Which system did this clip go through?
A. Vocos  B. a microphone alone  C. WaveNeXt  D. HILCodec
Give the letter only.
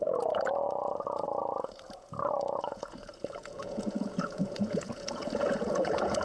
A